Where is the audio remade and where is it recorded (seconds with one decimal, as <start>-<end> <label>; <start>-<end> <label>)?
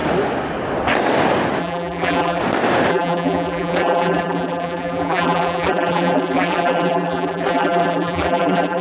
0.0-1.6 recorded; 1.6-2.4 remade; 2.4-2.9 recorded; 2.9-8.8 remade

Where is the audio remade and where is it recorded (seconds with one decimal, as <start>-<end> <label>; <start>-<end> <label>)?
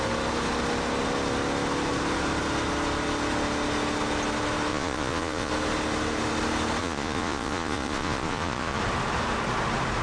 0.0-4.7 recorded; 4.7-5.5 remade; 5.5-6.8 recorded; 6.8-8.8 remade; 8.8-10.0 recorded